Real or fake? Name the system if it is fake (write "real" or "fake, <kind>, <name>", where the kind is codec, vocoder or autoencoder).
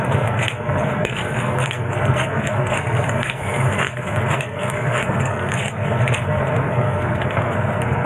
fake, codec, SNAC